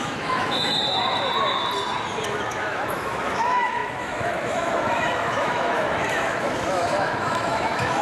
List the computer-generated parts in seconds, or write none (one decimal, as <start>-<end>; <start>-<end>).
0.0-0.8; 2.3-8.0